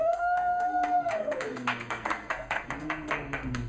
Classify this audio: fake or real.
fake